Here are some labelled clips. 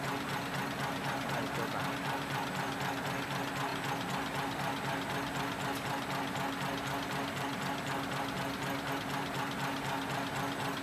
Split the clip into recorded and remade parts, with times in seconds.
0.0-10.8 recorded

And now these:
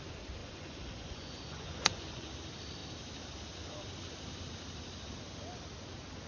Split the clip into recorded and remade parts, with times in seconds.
0.0-0.4 recorded; 0.4-2.3 remade; 2.3-6.3 recorded